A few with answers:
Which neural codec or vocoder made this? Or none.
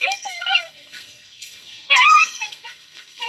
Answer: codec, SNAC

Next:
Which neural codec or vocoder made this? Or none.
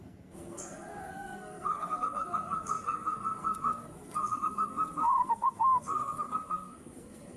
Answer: codec, SNAC